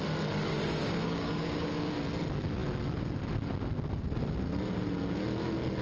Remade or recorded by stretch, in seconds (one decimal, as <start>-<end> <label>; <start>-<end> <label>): 0.0-0.5 recorded; 0.5-1.9 remade; 1.9-5.8 recorded